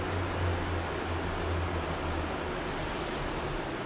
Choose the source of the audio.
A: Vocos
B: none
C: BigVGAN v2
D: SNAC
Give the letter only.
B